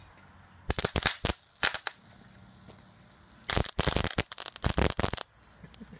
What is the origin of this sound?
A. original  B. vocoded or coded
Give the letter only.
A